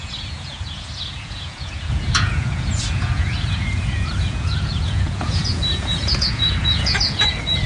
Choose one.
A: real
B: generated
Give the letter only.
B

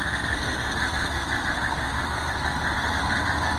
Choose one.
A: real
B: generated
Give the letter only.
B